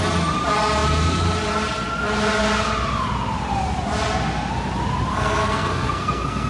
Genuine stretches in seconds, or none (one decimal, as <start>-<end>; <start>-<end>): 0.0-5.1